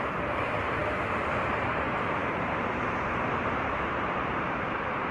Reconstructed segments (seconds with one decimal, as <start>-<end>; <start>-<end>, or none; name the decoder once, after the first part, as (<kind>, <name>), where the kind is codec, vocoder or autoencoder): 0.0-0.8 (vocoder, BigVGAN v2); 1.3-5.1